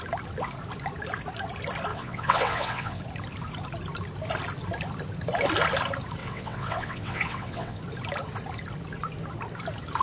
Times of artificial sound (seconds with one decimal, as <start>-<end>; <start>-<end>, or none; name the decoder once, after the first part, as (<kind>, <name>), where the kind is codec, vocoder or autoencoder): 1.9-3.0 (vocoder, WaveNeXt); 6.2-7.8